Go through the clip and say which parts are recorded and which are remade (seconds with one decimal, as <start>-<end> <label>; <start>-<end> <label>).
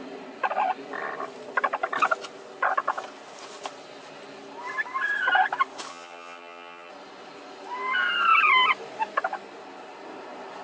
0.0-5.9 recorded; 5.9-6.9 remade; 6.9-10.6 recorded